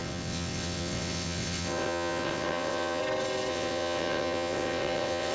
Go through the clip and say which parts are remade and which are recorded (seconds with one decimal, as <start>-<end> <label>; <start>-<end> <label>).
0.0-3.0 remade; 3.0-3.5 recorded; 3.5-5.3 remade